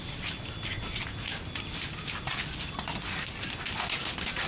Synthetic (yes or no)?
no